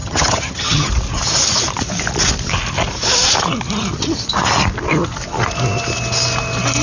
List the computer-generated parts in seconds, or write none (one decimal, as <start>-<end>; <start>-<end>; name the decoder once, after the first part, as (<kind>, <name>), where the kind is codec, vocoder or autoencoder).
0.0-0.9 (vocoder, HiFi-GAN)